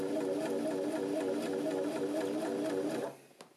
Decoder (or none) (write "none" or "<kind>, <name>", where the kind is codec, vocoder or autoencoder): none